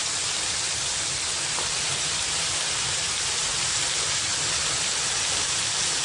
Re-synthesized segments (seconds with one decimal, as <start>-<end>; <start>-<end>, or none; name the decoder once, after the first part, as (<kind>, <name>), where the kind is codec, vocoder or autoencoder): none